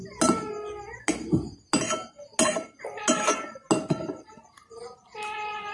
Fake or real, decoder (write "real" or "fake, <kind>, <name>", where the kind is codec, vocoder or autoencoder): real